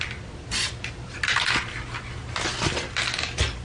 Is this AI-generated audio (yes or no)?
no